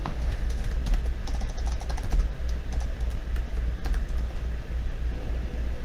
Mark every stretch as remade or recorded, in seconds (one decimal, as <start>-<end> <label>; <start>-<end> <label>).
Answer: 0.0-0.7 remade; 0.7-5.8 recorded

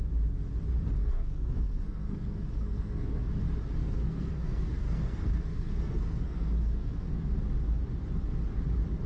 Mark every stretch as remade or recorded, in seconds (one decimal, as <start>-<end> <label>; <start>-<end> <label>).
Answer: 0.0-1.0 recorded; 1.0-3.3 remade; 3.3-3.8 recorded; 3.8-7.3 remade; 7.3-9.1 recorded

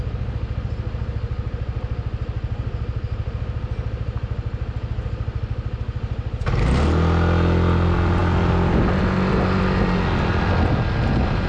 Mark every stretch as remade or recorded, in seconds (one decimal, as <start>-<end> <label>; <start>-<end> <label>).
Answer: 0.0-11.5 recorded

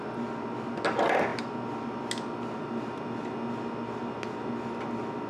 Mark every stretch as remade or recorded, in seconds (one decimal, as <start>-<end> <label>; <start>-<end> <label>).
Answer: 0.0-5.3 recorded

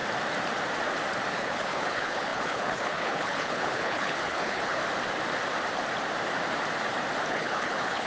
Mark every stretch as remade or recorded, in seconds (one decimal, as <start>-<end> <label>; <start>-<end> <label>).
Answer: 0.0-1.3 recorded; 1.3-4.8 remade; 4.8-7.3 recorded; 7.3-8.1 remade